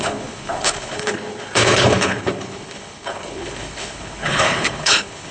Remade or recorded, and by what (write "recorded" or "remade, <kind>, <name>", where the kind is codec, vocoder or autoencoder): remade, codec, HILCodec